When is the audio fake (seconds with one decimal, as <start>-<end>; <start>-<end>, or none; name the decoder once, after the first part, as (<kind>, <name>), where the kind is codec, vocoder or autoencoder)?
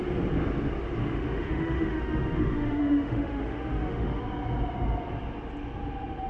1.0-4.2 (autoencoder, DAC-VAE)